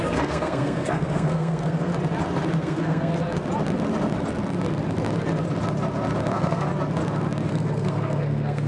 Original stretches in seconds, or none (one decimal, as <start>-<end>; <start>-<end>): 1.9-2.6; 3.1-6.3; 6.7-7.5